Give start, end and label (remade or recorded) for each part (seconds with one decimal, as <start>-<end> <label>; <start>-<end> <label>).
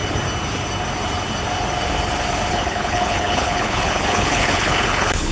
0.0-2.5 recorded; 2.5-5.3 remade